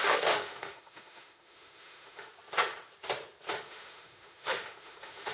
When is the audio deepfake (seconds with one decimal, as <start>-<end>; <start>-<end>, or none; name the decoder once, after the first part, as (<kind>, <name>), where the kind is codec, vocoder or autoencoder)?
0.0-2.3 (autoencoder, DAC-VAE); 3.5-5.3